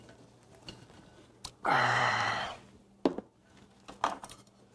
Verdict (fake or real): real